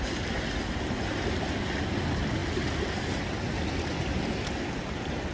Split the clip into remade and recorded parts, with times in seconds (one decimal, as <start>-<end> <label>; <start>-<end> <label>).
0.0-5.3 recorded